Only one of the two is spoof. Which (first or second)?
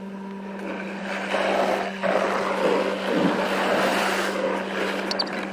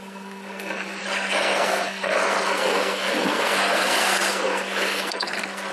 second